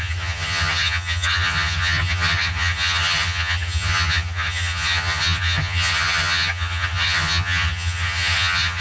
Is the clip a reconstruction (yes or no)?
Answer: yes